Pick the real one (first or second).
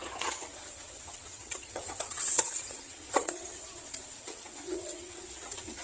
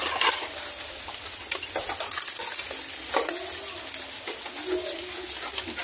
second